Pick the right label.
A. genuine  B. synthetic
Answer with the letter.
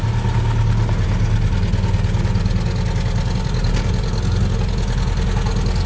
A